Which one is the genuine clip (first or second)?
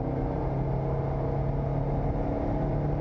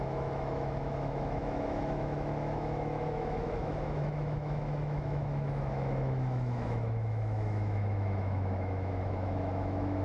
first